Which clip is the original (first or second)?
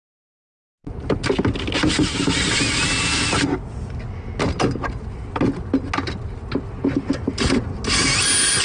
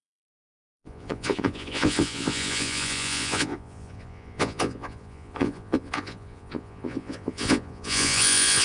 first